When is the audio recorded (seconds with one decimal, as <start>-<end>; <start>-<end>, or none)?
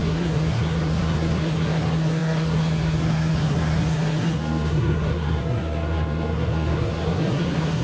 none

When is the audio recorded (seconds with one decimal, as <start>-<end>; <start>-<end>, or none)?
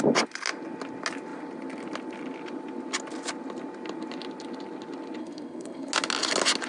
0.0-5.2; 5.9-6.7